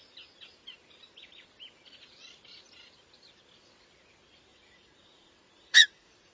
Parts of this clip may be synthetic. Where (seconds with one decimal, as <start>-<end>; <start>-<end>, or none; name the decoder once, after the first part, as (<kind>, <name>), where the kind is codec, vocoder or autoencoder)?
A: 4.5-6.3 (vocoder, Vocos)